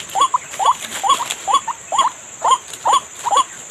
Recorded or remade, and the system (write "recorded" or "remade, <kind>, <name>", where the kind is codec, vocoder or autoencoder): recorded